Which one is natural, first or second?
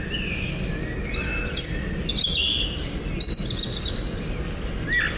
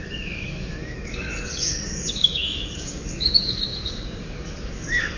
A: first